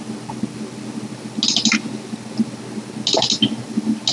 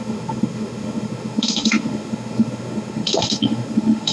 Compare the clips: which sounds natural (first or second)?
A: first